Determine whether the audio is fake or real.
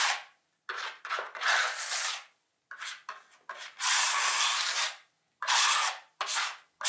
real